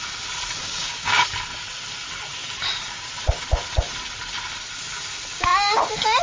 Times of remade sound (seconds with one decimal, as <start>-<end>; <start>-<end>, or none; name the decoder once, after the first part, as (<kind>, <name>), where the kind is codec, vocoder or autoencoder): 0.6-1.2 (codec, DAC)